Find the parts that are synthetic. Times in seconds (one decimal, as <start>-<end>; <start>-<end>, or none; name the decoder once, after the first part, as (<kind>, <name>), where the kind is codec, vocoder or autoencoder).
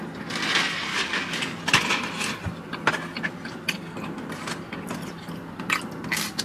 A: 0.9-1.6 (codec, DAC)